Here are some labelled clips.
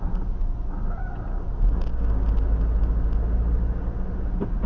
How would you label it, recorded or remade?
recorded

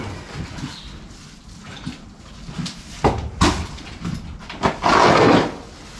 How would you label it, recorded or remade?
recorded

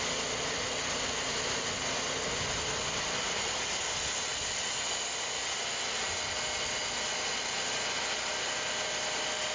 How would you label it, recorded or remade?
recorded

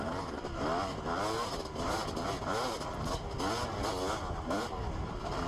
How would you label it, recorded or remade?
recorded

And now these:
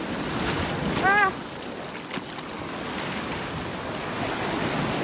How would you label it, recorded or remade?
recorded